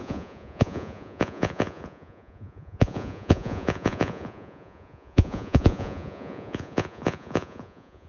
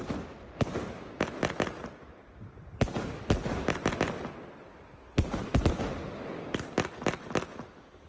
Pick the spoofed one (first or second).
first